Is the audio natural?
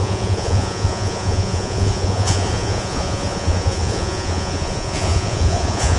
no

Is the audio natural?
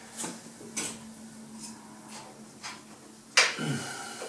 yes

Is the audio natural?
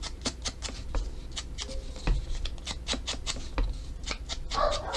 yes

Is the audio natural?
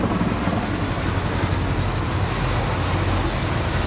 yes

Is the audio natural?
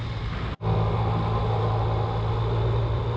yes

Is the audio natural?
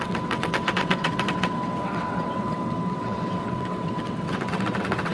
no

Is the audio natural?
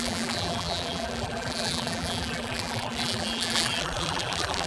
no